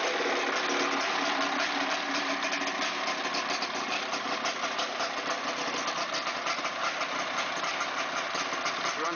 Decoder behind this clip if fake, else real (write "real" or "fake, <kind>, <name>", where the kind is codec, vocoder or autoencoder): real